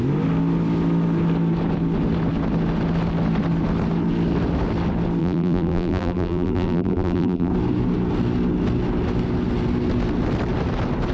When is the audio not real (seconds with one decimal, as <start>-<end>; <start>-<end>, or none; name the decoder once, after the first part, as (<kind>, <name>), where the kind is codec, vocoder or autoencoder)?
5.2-7.5 (vocoder, BigVGAN v2)